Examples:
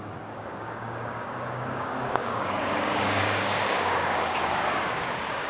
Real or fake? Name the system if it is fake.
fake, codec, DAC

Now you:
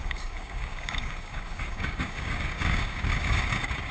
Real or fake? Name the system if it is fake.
fake, codec, DAC